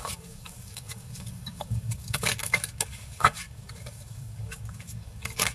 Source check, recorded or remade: remade